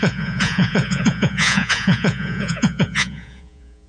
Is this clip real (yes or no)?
no